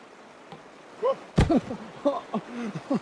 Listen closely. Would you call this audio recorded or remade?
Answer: recorded